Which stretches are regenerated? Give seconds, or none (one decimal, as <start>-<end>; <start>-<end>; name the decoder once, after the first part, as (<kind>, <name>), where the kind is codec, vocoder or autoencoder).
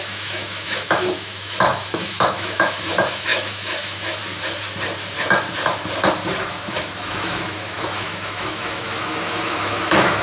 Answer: 0.0-4.2 (autoencoder, DAC-VAE); 6.5-10.2